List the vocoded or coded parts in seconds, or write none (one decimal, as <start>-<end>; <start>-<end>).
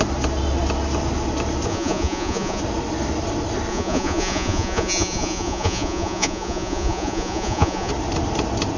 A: 1.7-2.6; 3.7-7.9